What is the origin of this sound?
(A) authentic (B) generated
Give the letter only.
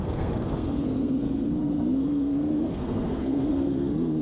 B